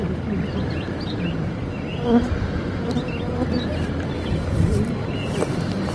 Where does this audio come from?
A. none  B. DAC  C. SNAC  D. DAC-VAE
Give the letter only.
A